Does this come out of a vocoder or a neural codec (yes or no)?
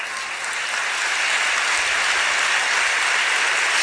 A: no